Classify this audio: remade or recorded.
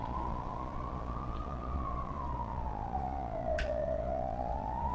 remade